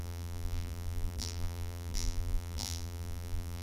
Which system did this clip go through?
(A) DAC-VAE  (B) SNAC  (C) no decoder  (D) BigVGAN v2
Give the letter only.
D